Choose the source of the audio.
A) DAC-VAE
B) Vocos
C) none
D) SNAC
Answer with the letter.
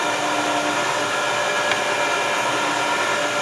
C